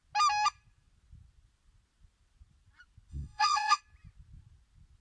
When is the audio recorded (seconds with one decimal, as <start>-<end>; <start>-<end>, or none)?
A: 0.0-3.1; 3.8-5.0